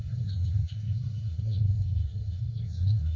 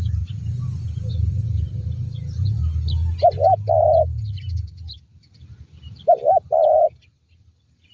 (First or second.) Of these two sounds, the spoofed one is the first